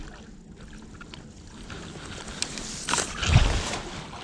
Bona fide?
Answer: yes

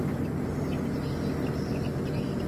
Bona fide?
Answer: yes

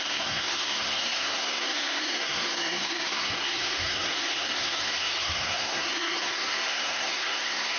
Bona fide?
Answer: no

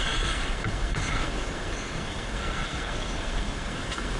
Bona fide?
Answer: no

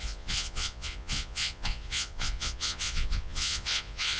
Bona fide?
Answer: no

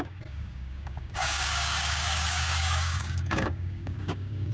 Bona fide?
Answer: no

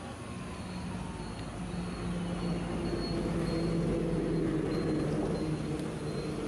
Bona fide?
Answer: yes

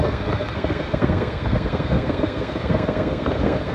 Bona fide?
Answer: no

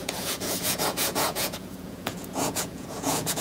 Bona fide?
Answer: no